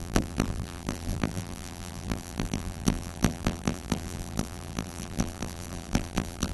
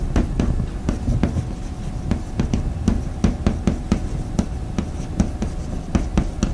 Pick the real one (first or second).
second